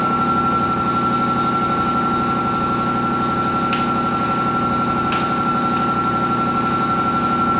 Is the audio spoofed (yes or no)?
no